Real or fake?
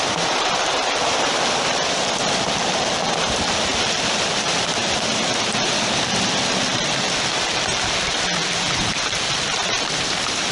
fake